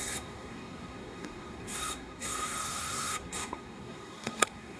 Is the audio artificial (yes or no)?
yes